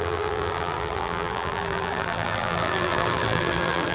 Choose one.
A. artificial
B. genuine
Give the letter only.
A